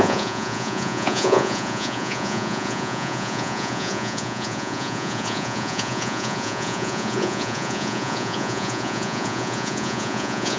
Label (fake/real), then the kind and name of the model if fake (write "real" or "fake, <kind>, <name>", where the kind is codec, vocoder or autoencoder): fake, vocoder, Vocos